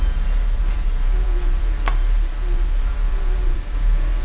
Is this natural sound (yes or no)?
no